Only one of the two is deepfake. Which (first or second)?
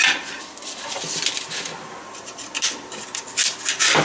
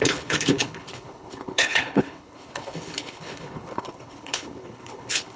second